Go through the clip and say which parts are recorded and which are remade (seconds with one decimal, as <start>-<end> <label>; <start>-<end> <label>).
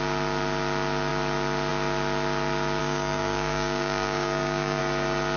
0.0-2.8 recorded; 2.8-4.8 remade; 4.8-5.4 recorded